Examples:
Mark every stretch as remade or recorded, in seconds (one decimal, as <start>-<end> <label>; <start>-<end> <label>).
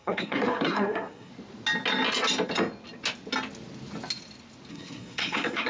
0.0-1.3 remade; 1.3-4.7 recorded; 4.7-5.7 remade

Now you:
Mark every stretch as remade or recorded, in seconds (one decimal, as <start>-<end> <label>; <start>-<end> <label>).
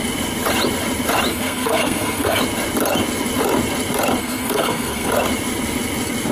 0.0-1.3 recorded; 1.3-2.4 remade; 2.4-4.2 recorded; 4.2-5.1 remade; 5.1-6.3 recorded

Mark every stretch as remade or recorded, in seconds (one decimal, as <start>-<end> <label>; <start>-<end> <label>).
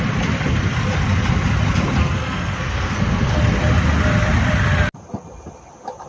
0.0-2.0 recorded; 2.0-3.3 remade; 3.3-6.1 recorded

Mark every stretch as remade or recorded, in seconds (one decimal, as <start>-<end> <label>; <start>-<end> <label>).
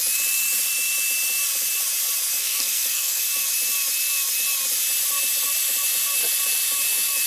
0.0-2.4 recorded; 2.4-3.2 remade; 3.2-7.3 recorded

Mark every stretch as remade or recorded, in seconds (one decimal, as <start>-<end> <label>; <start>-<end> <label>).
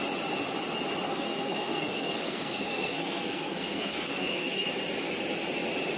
0.0-1.1 recorded; 1.1-4.7 remade; 4.7-6.0 recorded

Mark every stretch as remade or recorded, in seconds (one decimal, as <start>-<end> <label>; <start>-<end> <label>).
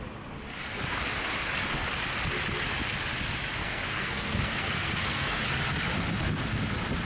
0.0-3.6 recorded; 3.6-5.4 remade; 5.4-7.1 recorded